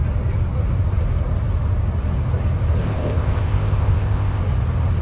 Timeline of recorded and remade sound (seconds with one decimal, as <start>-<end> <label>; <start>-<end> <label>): 0.0-2.8 recorded; 2.8-4.4 remade; 4.4-5.0 recorded